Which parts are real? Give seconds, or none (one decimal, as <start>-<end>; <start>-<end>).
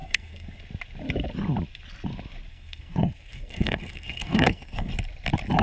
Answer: 0.6-2.5; 4.9-5.6